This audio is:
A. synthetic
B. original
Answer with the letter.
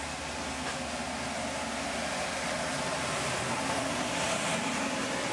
B